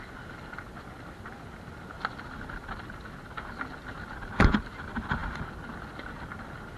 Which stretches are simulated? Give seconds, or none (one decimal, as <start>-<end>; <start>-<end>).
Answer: none